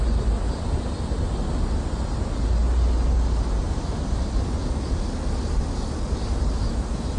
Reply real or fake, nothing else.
real